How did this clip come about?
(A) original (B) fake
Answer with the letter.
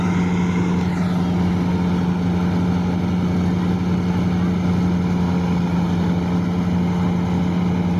A